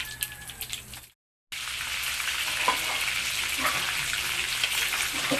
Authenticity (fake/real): real